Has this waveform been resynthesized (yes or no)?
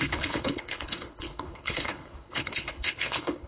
yes